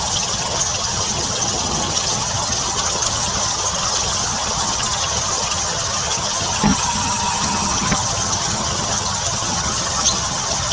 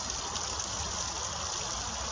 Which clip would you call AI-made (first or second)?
first